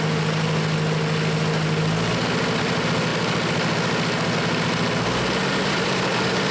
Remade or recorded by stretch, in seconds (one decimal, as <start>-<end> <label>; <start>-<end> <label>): 0.0-5.4 recorded; 5.4-6.5 remade